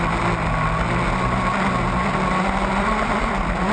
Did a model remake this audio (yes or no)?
no